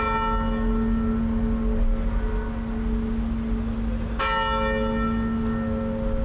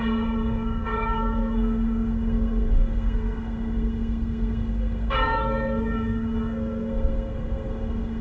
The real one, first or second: first